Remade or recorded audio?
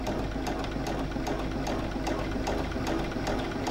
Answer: recorded